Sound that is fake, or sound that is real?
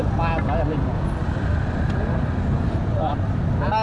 real